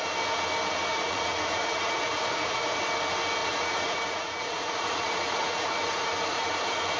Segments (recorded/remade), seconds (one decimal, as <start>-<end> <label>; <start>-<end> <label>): 0.0-0.9 recorded; 0.9-2.8 remade; 2.8-3.4 recorded; 3.4-6.5 remade; 6.5-7.0 recorded